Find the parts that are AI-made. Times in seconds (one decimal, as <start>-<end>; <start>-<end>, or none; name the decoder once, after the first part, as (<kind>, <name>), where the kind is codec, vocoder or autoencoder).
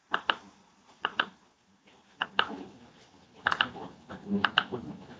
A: 0.6-1.3 (vocoder, Vocos)